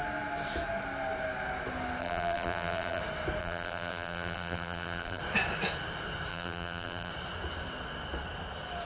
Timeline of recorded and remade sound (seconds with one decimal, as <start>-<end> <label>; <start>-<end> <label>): 0.0-2.0 recorded; 2.0-3.0 remade; 3.0-3.4 recorded; 3.4-5.2 remade; 5.2-6.3 recorded; 6.3-7.1 remade; 7.1-8.9 recorded